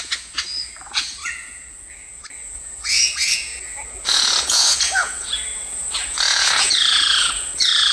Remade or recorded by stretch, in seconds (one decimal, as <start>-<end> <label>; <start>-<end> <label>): 0.0-7.9 remade